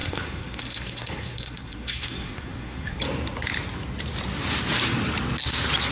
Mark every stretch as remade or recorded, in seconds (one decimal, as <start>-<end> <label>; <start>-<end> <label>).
0.0-3.0 remade; 3.0-5.9 recorded